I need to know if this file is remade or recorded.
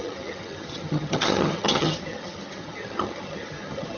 remade